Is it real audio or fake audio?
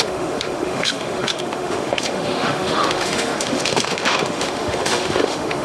fake